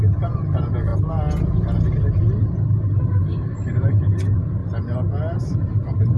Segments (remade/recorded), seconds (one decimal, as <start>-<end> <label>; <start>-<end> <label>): 0.0-0.9 remade; 0.9-3.0 recorded; 3.0-4.6 remade; 4.6-5.4 recorded; 5.4-6.2 remade